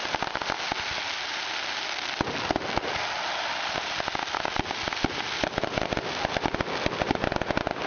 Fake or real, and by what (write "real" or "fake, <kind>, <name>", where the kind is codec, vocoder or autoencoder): real